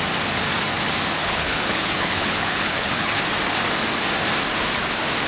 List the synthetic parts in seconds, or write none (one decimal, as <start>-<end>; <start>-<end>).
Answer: 1.2-3.2